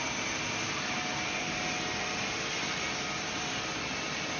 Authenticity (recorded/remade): recorded